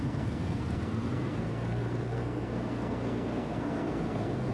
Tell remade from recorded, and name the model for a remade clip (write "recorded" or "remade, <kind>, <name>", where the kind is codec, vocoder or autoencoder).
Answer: remade, codec, SNAC